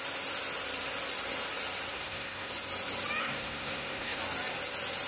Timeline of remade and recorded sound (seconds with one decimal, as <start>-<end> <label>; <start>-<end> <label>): 0.0-1.9 recorded; 1.9-2.5 remade; 2.5-3.2 recorded; 3.2-4.2 remade; 4.2-5.1 recorded

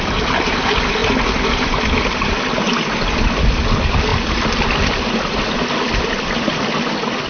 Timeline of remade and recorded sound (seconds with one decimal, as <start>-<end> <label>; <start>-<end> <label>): 0.0-7.3 recorded

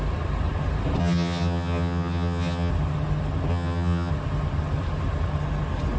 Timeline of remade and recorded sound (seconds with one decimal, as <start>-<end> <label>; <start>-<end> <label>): 0.0-1.0 recorded; 1.0-2.7 remade; 2.7-3.5 recorded; 3.5-4.1 remade; 4.1-6.0 recorded

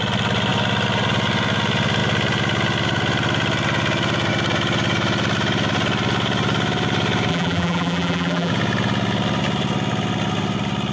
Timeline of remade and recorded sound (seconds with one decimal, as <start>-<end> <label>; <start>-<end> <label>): 0.0-7.3 recorded; 7.3-8.5 remade; 8.5-10.9 recorded

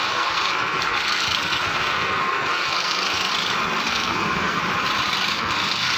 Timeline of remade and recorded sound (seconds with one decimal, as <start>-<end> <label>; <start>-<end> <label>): 0.0-3.3 remade; 3.3-3.9 recorded; 3.9-4.6 remade; 4.6-5.3 recorded; 5.3-6.0 remade